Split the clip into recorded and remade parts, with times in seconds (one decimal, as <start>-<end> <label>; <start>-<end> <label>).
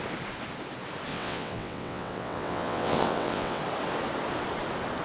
0.0-1.1 recorded; 1.1-3.6 remade; 3.6-5.0 recorded